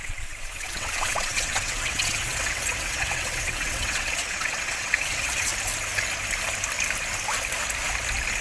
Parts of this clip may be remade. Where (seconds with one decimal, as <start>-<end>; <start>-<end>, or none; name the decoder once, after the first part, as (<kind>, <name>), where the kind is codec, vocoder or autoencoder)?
0.0-5.5 (vocoder, WaveNeXt)